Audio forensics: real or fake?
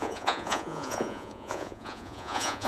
fake